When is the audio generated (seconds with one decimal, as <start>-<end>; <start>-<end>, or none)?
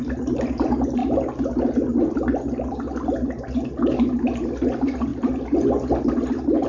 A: none